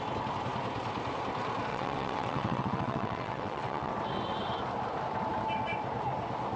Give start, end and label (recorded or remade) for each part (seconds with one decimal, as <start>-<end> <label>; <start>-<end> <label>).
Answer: 0.0-1.7 recorded; 1.7-3.9 remade; 3.9-6.6 recorded